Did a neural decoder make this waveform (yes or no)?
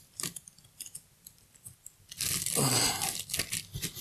no